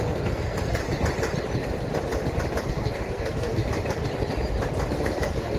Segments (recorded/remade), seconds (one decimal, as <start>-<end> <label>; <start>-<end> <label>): 0.0-0.8 remade; 0.8-2.7 recorded; 2.7-3.6 remade; 3.6-4.9 recorded; 4.9-5.6 remade

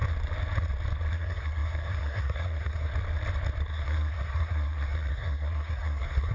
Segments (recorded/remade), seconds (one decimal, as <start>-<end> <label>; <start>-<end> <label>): 0.0-1.1 recorded; 1.1-2.9 remade; 2.9-3.7 recorded; 3.7-6.3 remade

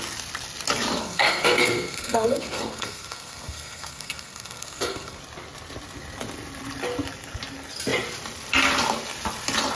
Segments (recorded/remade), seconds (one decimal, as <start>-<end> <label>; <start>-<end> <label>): 0.0-1.0 recorded; 1.0-5.2 remade; 5.2-9.8 recorded

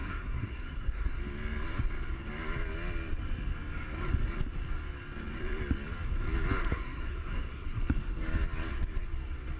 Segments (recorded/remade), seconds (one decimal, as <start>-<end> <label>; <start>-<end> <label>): 0.0-1.2 remade; 1.2-6.6 recorded; 6.6-7.8 remade; 7.8-9.6 recorded

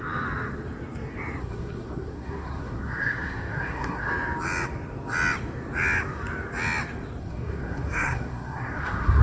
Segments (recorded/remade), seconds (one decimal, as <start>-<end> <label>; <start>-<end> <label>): 0.0-1.4 recorded; 1.4-4.1 remade; 4.1-7.2 recorded; 7.2-9.2 remade

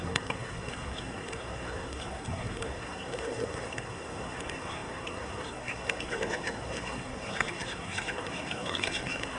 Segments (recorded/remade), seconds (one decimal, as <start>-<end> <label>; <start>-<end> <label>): 0.0-9.4 remade